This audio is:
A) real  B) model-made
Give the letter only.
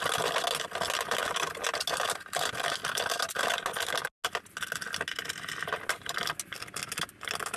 A